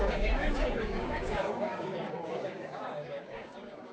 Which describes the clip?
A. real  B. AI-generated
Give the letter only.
B